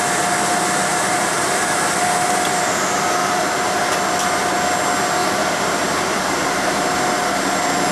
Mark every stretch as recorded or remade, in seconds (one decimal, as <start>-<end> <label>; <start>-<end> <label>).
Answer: 0.0-0.9 recorded; 0.9-1.6 remade; 1.6-3.2 recorded; 3.2-3.8 remade; 3.8-5.2 recorded; 5.2-7.1 remade; 7.1-7.9 recorded